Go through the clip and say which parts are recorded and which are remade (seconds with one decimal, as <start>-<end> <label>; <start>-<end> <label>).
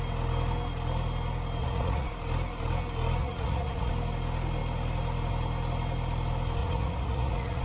0.0-1.6 recorded; 1.6-2.1 remade; 2.1-3.2 recorded; 3.2-3.9 remade; 3.9-6.6 recorded; 6.6-7.6 remade